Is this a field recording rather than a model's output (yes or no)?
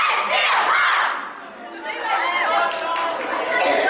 yes